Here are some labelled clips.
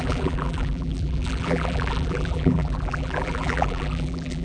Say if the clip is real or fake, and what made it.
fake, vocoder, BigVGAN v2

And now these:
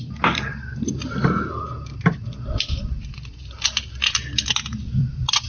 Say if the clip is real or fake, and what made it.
fake, vocoder, BigVGAN v2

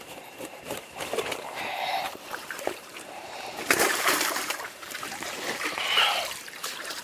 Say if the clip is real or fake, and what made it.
fake, vocoder, BigVGAN v2